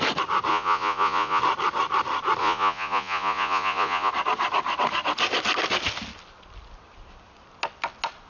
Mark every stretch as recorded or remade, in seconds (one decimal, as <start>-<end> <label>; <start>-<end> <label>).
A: 0.0-0.5 recorded; 0.5-1.4 remade; 1.4-2.4 recorded; 2.4-4.1 remade; 4.1-8.3 recorded

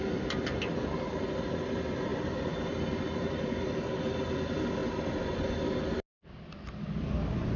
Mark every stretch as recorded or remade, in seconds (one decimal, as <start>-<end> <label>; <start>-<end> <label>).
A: 0.0-7.6 recorded

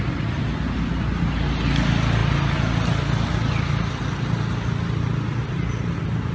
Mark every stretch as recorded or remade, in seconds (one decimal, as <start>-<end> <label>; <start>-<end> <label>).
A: 0.0-6.3 recorded

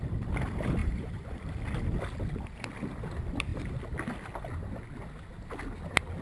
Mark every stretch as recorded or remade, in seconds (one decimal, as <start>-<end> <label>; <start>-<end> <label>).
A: 0.0-0.8 recorded; 0.8-1.4 remade; 1.4-6.2 recorded

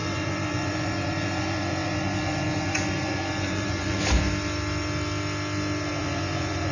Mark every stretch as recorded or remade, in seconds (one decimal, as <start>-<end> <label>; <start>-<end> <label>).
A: 0.0-4.0 remade; 4.0-6.0 recorded; 6.0-6.7 remade

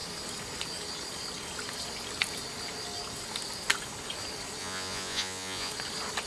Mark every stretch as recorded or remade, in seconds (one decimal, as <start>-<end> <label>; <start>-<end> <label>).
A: 0.0-4.6 recorded; 4.6-5.7 remade; 5.7-6.3 recorded

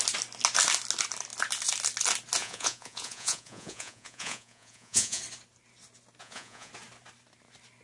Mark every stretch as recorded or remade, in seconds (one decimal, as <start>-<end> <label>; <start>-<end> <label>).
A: 0.0-2.4 recorded; 2.4-5.2 remade; 5.2-6.2 recorded; 6.2-6.7 remade; 6.7-7.8 recorded

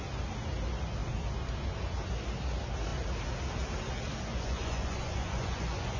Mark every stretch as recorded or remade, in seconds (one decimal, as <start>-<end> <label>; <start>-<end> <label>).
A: 0.0-4.3 recorded; 4.3-6.0 remade